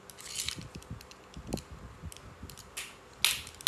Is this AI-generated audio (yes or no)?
no